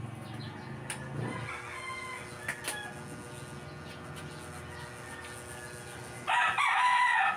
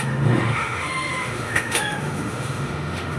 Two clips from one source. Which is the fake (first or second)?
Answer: second